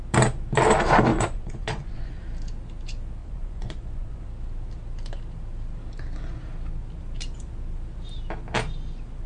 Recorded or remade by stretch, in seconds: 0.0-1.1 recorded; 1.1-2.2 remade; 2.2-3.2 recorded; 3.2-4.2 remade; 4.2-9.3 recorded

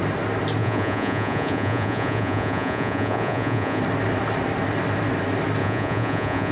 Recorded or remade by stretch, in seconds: 0.0-0.6 recorded; 0.6-3.8 remade; 3.8-5.6 recorded; 5.6-6.5 remade

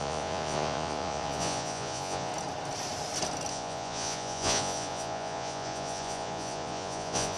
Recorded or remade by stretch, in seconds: 0.0-2.3 remade; 2.3-3.5 recorded; 3.5-7.4 remade